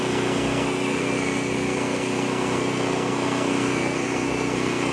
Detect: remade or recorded remade